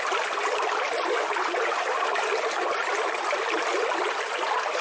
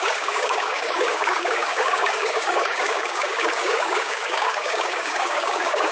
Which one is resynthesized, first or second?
second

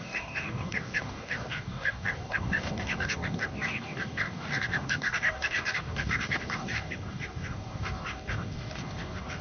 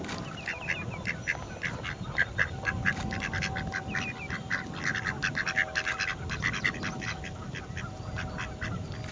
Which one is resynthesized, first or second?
first